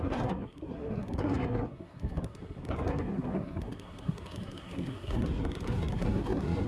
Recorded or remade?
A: remade